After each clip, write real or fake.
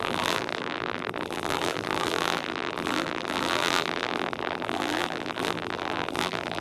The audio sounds fake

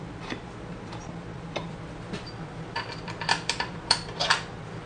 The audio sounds fake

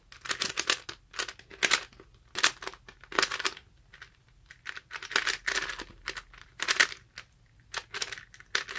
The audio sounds real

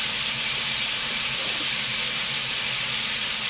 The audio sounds fake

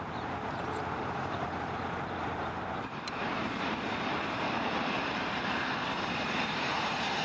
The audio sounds fake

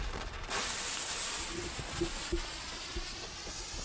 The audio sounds fake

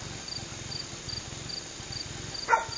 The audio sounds real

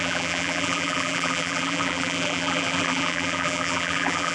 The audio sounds fake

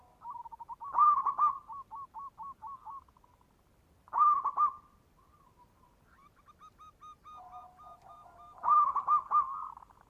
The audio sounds fake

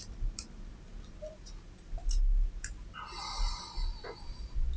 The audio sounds real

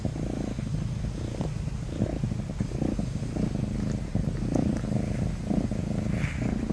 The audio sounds real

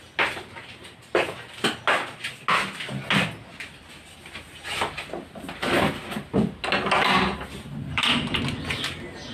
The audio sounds real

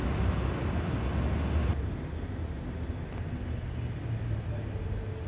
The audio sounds real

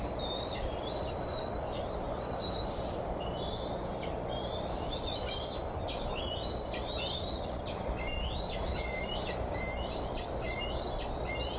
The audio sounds fake